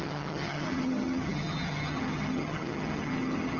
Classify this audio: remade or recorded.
remade